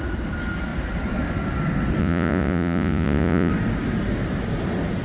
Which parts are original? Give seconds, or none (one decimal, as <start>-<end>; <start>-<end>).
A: 0.0-2.0; 3.5-5.0